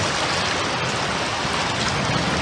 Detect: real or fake real